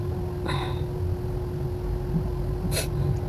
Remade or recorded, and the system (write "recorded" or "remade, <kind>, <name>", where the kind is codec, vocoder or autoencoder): recorded